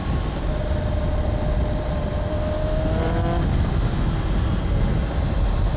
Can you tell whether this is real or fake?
real